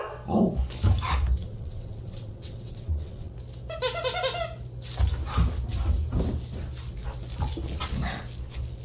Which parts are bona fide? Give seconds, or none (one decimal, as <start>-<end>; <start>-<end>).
0.0-1.4; 3.3-8.8